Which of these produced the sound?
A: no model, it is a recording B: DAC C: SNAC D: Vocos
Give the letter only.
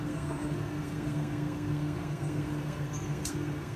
C